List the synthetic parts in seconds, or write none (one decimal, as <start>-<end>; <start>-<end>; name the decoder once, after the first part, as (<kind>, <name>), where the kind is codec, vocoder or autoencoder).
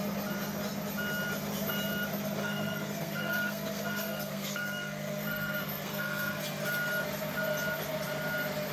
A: 2.4-6.4 (codec, SNAC)